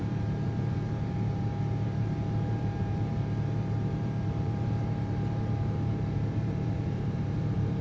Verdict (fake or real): fake